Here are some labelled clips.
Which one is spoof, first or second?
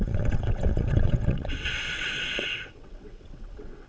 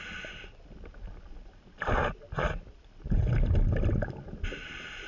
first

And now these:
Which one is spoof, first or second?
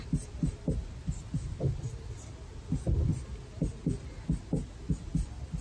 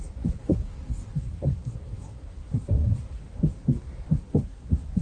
second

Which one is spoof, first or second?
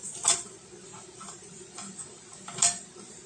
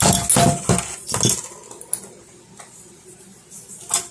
first